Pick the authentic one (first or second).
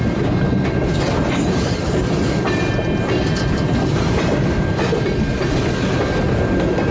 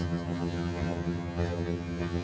first